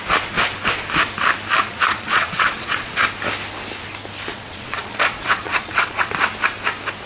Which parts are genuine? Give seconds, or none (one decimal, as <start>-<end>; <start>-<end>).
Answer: 0.0-1.7; 2.9-4.3; 6.1-7.1